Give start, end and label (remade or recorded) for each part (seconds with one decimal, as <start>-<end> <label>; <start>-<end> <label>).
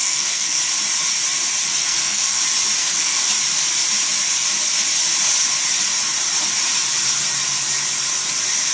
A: 0.0-0.6 remade; 0.6-1.8 recorded; 1.8-2.4 remade; 2.4-2.8 recorded; 2.8-3.3 remade; 3.3-8.7 recorded